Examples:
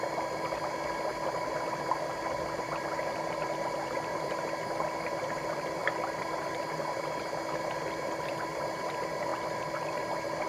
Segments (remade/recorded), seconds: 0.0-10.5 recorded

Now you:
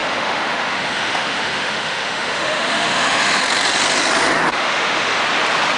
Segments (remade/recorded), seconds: 0.0-3.4 remade; 3.4-4.5 recorded; 4.5-5.2 remade; 5.2-5.8 recorded

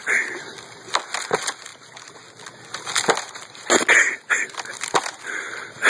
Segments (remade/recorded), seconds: 0.0-5.9 recorded

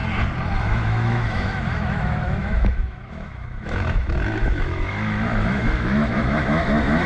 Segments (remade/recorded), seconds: 0.0-0.6 recorded; 0.6-7.1 remade